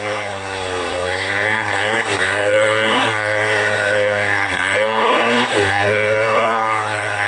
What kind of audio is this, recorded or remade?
remade